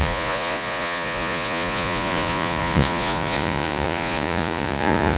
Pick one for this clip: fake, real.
fake